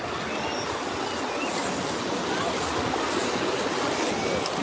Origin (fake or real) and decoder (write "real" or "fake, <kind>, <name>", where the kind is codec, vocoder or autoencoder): real